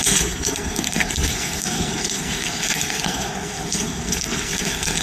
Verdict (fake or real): fake